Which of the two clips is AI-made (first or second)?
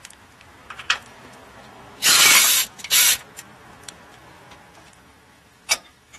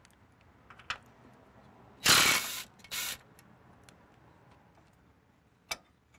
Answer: first